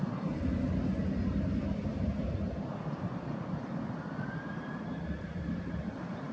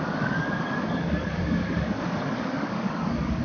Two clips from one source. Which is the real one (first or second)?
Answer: first